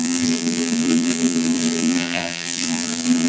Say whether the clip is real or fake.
fake